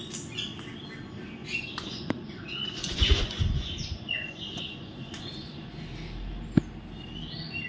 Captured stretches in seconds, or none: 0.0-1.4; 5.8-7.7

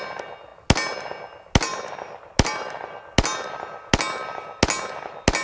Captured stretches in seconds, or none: 0.0-5.4

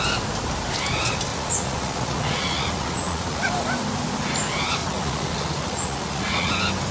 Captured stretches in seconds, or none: 0.0-1.3; 3.5-4.8; 6.5-6.9

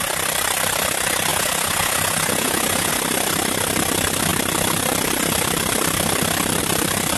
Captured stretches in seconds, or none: 0.0-1.3; 2.9-7.2

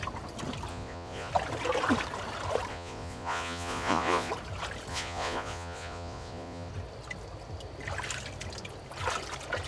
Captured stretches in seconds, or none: 0.0-0.7; 1.3-2.7; 4.3-4.9; 6.7-9.7

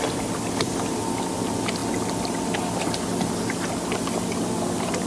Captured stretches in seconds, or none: 0.0-5.1